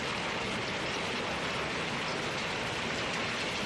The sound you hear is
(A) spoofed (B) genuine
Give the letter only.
B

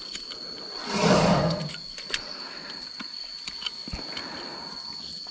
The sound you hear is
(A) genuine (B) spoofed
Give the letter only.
A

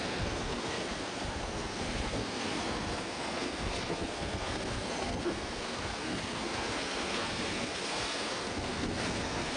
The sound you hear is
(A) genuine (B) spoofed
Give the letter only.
B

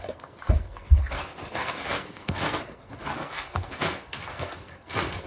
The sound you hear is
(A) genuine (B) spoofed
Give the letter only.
B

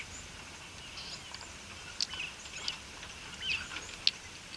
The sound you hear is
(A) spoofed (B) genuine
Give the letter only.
B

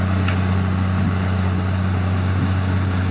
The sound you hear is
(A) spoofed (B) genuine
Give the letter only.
B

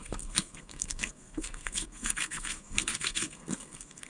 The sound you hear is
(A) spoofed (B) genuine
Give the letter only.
A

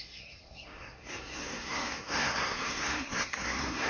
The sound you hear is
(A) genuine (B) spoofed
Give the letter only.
B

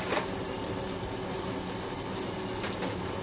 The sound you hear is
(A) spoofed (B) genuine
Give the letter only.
B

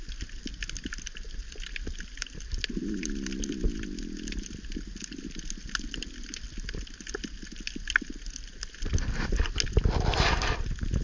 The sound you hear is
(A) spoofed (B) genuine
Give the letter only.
B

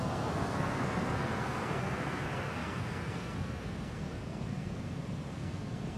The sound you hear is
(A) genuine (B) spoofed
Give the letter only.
B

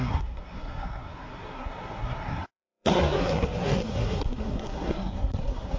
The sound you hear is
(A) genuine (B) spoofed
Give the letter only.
B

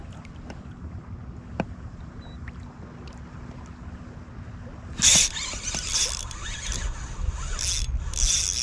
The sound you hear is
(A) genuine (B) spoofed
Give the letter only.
A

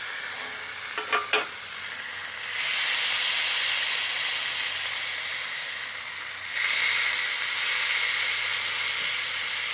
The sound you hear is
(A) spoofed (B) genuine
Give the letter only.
B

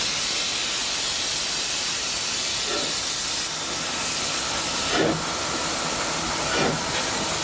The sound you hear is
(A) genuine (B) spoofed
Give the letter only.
A